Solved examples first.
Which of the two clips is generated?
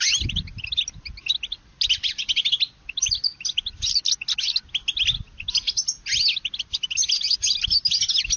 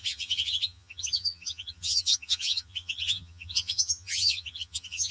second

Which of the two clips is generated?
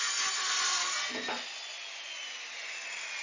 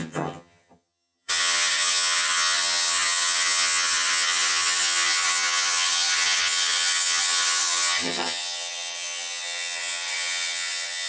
second